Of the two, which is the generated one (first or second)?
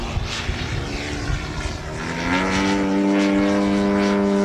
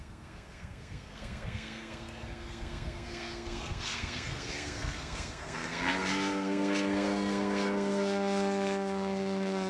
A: second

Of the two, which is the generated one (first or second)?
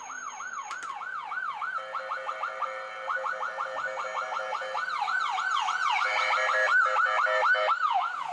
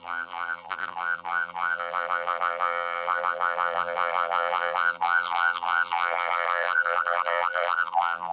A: second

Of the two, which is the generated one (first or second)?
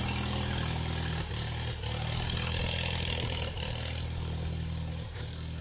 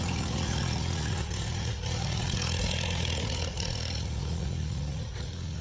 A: second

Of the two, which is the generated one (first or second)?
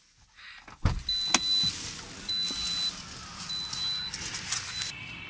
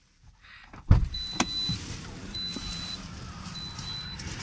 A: second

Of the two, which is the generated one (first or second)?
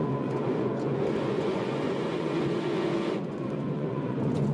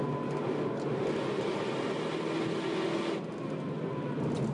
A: first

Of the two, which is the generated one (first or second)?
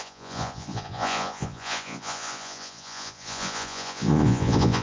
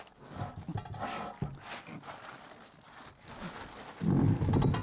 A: first